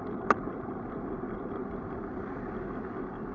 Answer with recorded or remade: recorded